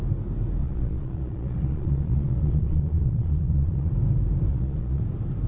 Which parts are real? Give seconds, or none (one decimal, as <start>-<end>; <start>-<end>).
0.0-0.6; 3.9-4.5; 5.0-5.5